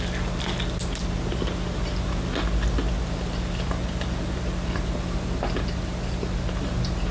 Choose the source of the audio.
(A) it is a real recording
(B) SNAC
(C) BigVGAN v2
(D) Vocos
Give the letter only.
A